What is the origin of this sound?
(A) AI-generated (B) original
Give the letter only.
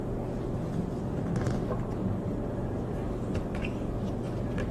B